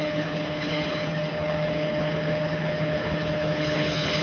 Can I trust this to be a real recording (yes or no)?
no